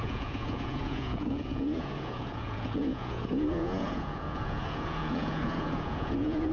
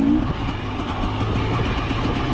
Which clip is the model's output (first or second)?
first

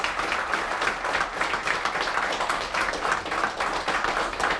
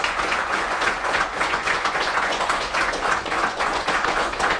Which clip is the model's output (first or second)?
second